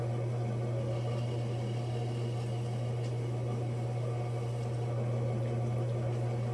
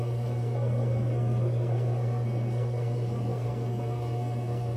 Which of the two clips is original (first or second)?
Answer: first